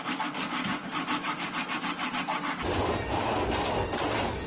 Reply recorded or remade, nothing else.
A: recorded